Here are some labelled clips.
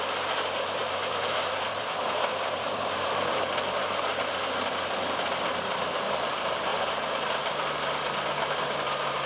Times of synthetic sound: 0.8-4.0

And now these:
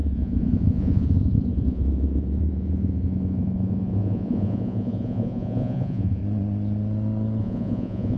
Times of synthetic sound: 0.0-6.2; 7.4-8.2

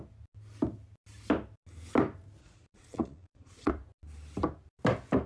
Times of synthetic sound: 2.4-3.7

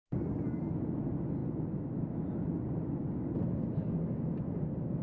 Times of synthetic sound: none